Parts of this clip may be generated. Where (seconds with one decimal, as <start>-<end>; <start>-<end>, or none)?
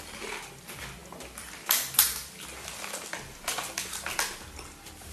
none